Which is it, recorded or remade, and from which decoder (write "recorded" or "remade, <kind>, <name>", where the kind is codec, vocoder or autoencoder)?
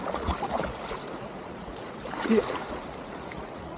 remade, vocoder, Vocos